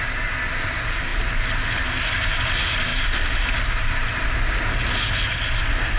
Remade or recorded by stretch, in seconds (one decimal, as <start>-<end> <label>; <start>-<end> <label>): 0.0-6.0 recorded